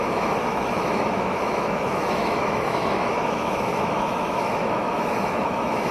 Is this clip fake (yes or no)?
yes